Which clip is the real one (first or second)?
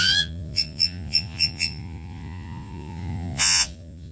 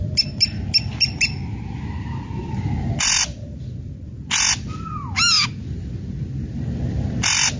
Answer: second